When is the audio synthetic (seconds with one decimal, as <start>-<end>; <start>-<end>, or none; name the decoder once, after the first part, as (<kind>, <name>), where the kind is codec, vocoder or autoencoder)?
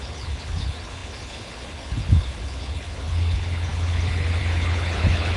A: 0.0-5.4 (codec, HILCodec)